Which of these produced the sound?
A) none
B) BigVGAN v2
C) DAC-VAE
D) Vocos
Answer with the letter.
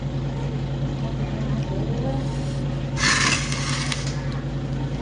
A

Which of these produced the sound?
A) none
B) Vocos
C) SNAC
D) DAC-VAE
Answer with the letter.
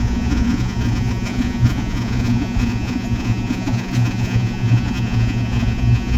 B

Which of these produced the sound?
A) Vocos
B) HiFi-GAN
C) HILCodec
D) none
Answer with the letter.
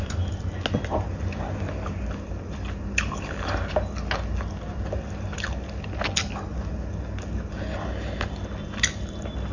D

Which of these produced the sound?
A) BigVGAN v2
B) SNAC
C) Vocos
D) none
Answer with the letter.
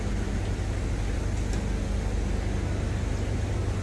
D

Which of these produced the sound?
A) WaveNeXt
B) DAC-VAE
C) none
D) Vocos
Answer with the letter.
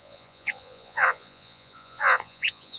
D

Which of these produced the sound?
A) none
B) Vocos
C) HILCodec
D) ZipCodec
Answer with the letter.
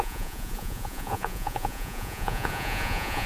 B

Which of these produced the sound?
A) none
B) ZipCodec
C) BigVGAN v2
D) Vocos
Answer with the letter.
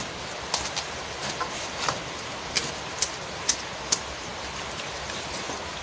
A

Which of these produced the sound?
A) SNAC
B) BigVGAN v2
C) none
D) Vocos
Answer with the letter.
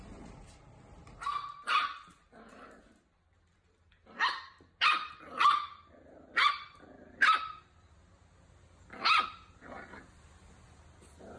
C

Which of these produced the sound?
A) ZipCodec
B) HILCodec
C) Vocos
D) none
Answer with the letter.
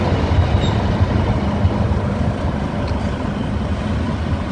D